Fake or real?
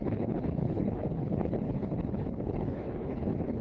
fake